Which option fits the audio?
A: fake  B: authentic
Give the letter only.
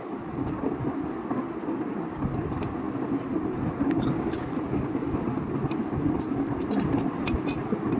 B